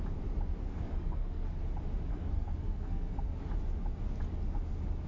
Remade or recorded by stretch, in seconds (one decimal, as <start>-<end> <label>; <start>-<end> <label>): 0.0-0.6 recorded; 0.6-1.6 remade; 1.6-2.1 recorded; 2.1-3.4 remade; 3.4-5.1 recorded